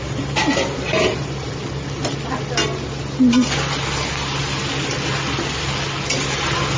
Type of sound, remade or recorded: recorded